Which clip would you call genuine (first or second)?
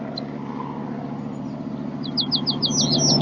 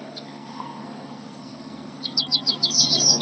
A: first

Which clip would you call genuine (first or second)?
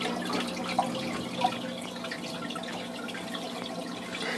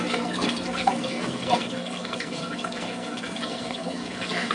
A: first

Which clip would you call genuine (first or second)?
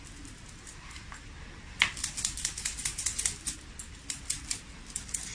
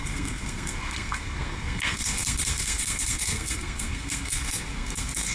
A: first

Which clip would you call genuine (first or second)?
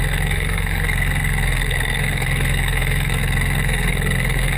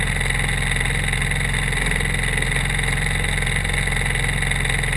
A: second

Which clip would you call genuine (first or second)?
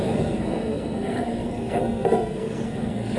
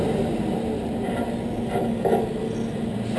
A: second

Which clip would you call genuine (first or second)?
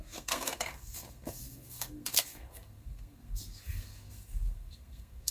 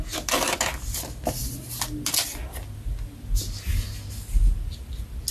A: second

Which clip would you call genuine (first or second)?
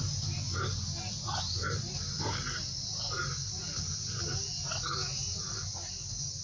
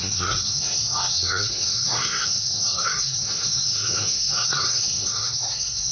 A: first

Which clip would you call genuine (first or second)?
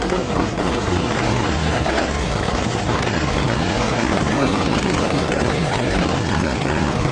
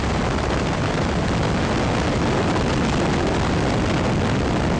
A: second